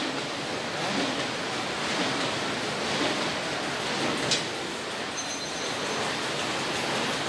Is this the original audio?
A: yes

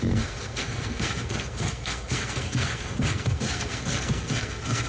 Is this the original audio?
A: no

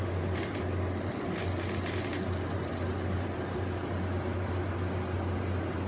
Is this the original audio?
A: yes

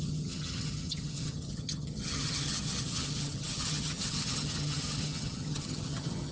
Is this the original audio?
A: no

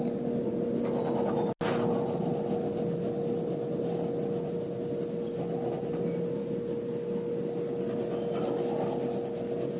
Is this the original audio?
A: yes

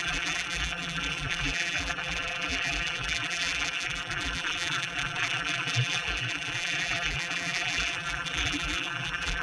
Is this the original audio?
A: no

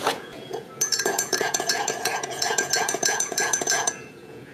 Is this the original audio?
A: no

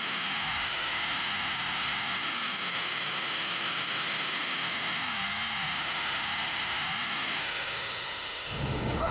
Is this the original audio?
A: no